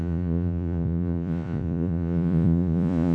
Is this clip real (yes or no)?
no